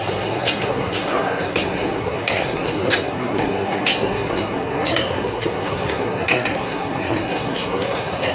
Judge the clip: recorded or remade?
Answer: remade